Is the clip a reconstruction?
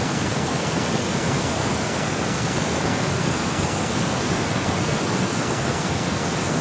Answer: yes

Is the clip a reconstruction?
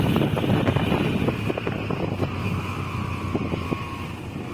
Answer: no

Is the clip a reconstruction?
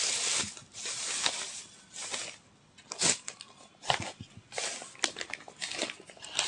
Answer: no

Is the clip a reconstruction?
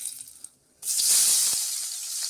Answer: no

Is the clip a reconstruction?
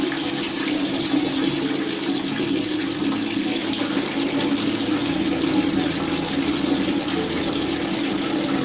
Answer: no